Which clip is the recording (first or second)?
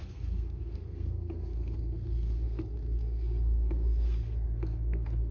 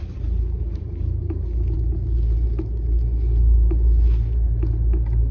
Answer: second